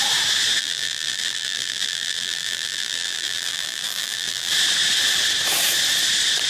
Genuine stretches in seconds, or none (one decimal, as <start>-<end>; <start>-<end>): 0.0-0.6; 4.5-6.5